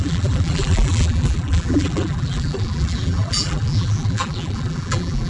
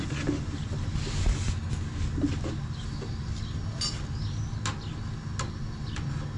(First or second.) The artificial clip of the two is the first